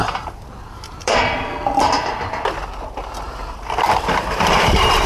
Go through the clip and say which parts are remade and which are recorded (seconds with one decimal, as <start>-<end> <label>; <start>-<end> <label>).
0.0-1.7 remade; 1.7-3.2 recorded; 3.2-5.1 remade